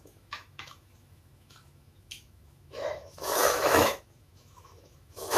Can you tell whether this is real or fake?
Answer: fake